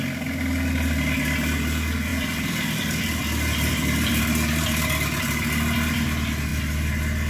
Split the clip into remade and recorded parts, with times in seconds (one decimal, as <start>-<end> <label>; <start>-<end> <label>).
0.0-2.1 recorded; 2.1-4.2 remade; 4.2-7.3 recorded